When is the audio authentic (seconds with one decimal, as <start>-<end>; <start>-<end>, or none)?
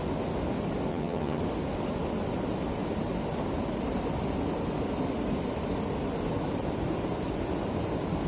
0.0-0.9; 1.4-8.3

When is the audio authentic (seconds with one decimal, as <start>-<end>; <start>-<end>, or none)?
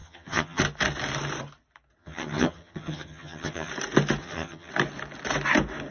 0.6-2.0; 3.7-4.2; 4.7-5.9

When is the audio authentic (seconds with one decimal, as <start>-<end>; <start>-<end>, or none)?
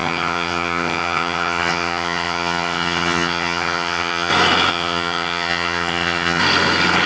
4.3-4.7; 6.4-7.1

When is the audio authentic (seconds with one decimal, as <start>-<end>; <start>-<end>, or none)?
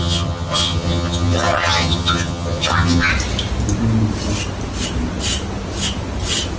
3.1-6.6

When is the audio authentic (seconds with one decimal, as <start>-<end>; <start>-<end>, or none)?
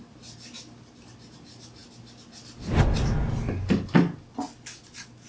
0.0-5.3